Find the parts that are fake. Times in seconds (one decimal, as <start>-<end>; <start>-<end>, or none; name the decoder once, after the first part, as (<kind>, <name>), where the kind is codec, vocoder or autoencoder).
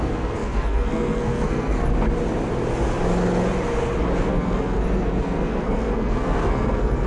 0.0-1.9 (codec, SNAC); 4.2-7.1